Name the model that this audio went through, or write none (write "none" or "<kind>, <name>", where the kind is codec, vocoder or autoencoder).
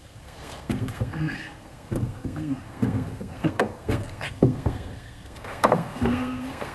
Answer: codec, SNAC